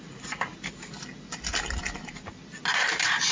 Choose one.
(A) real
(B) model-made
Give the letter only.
A